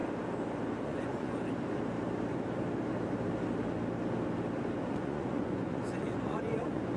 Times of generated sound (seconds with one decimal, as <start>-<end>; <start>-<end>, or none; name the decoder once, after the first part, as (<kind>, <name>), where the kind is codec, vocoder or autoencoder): 0.8-1.3 (vocoder, Vocos); 4.9-7.0